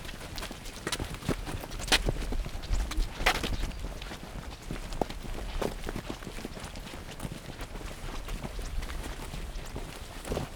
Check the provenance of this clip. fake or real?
real